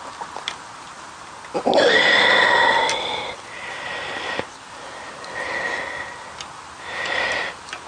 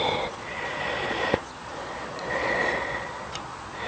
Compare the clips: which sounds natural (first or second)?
first